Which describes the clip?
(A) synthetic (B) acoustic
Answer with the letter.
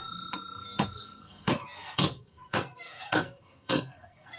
A